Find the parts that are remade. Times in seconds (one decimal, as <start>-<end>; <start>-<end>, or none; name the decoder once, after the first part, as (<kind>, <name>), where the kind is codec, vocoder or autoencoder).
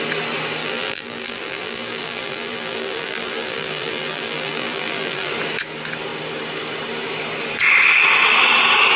0.6-5.3 (vocoder, BigVGAN v2)